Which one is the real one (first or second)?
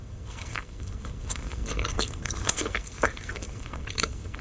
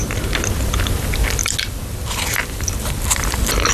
second